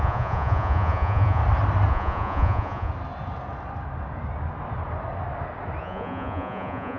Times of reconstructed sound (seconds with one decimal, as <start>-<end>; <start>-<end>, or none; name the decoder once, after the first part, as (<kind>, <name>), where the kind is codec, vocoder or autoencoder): 0.0-1.4 (vocoder, Vocos); 1.9-2.9; 5.8-7.0